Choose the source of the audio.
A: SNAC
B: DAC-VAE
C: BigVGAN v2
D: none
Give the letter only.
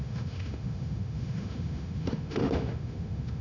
B